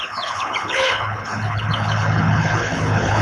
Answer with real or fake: fake